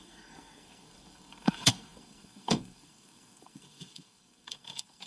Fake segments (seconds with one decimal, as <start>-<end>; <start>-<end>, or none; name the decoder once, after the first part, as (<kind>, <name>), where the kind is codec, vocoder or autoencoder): 0.0-5.1 (codec, SNAC)